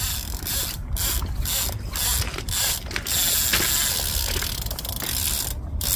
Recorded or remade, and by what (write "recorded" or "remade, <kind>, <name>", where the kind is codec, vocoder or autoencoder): recorded